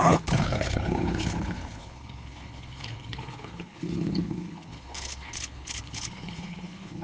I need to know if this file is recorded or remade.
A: remade